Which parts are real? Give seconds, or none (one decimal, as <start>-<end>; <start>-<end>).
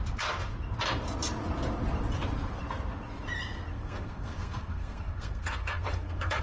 0.0-3.7